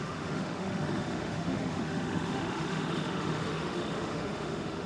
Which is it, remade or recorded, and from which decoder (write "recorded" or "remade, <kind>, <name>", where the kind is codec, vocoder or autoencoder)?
remade, autoencoder, DAC-VAE